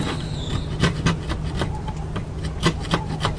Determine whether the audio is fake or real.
real